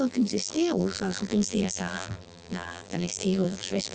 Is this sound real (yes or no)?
no